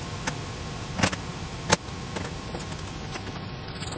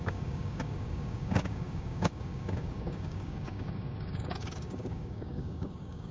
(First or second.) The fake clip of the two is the second